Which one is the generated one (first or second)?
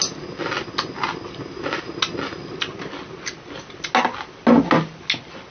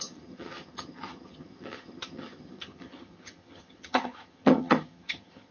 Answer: second